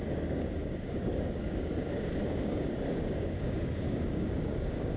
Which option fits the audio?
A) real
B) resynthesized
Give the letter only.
B